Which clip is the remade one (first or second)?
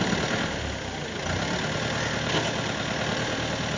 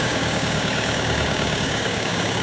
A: second